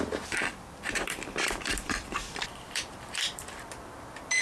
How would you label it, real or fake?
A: fake